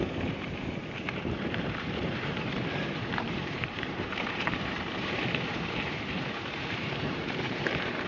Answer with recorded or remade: remade